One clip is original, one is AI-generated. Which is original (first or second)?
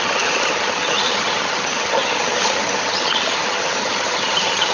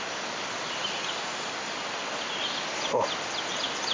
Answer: second